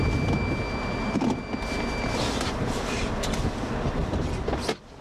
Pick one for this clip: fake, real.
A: real